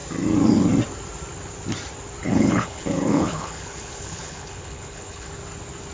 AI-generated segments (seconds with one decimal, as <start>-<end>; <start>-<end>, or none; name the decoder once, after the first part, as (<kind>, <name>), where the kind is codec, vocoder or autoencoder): 2.2-5.3 (codec, HILCodec)